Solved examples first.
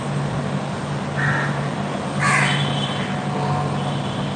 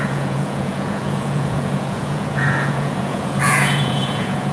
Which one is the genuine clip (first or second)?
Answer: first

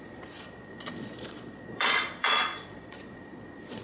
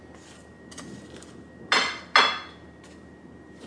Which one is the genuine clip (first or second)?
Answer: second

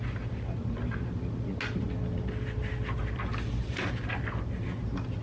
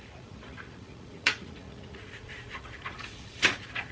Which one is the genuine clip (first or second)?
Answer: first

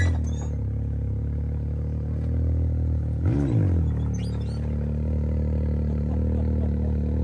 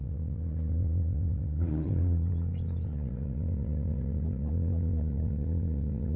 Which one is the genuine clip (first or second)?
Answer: first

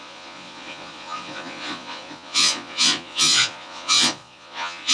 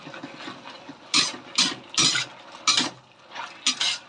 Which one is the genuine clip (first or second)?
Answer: second